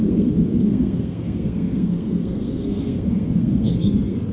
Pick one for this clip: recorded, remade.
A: remade